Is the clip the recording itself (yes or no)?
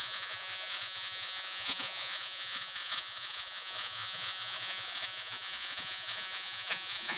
no